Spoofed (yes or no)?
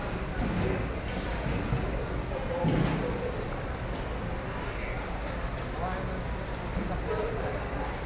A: no